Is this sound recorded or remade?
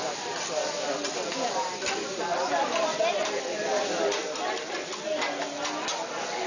recorded